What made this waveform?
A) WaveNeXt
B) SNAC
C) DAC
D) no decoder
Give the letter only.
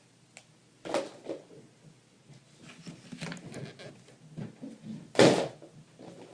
D